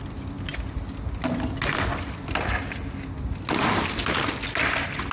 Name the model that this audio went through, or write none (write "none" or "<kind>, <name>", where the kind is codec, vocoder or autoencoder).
none